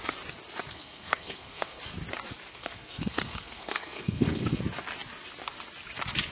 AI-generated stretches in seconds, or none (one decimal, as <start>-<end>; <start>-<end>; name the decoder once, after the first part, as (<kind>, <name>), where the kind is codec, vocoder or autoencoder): 0.7-1.8 (codec, SNAC); 2.5-4.6